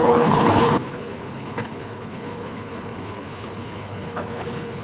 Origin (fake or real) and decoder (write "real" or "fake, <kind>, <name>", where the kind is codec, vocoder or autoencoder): fake, codec, HILCodec